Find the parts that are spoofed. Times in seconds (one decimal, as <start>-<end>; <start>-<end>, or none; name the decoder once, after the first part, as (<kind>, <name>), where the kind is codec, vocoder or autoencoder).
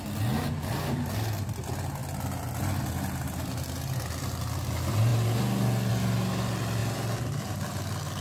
none